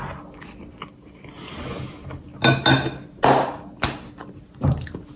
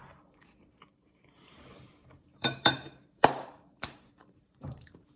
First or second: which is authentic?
first